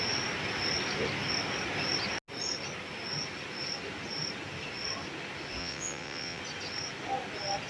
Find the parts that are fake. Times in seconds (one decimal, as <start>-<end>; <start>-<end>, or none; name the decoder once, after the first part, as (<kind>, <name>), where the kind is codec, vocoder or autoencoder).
5.6-6.4 (vocoder, WaveNeXt)